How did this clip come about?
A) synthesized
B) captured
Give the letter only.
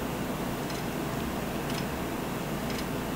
B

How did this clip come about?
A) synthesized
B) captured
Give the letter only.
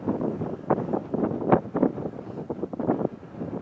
B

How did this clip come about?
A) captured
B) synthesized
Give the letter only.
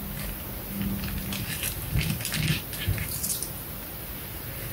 A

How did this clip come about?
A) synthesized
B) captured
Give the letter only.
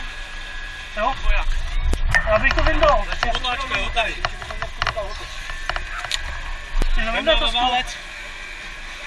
B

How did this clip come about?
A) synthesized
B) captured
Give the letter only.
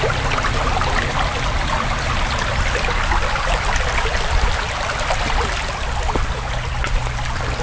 B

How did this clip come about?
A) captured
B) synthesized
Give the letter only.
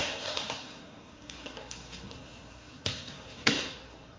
B